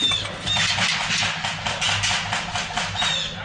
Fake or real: real